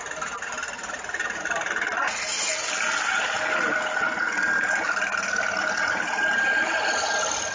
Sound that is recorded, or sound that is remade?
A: recorded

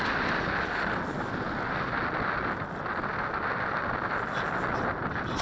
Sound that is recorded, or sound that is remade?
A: recorded